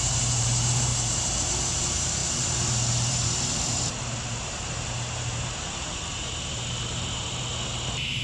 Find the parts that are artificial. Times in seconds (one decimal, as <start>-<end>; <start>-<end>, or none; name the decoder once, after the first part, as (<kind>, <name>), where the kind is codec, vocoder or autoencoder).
0.0-0.9 (vocoder, BigVGAN v2); 1.5-8.2